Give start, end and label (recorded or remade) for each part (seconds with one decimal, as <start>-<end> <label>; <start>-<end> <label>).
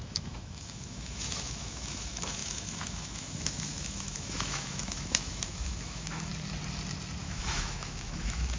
0.0-6.3 remade; 6.3-7.2 recorded; 7.2-8.6 remade